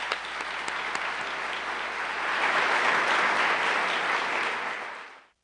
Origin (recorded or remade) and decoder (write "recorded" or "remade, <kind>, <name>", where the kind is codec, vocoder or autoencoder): recorded